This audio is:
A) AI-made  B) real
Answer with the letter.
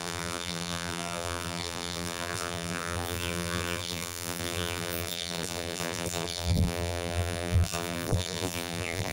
A